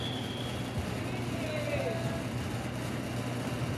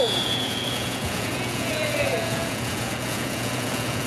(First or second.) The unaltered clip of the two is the first